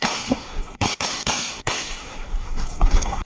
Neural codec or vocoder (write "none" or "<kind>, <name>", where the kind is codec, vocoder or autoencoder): codec, SNAC